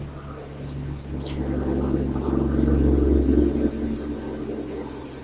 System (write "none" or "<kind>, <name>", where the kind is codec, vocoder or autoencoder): none